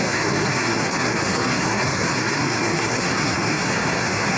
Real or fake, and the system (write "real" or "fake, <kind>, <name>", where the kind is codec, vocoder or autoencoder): fake, codec, SNAC